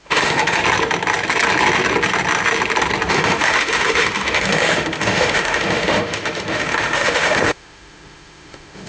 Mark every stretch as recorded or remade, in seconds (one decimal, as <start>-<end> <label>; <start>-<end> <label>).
0.0-0.6 remade; 0.6-3.1 recorded; 3.1-8.9 remade